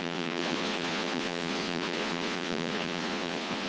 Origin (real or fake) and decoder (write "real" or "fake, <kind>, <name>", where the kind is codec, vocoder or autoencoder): fake, vocoder, Vocos